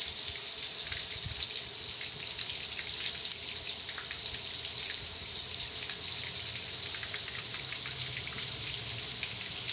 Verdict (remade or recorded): recorded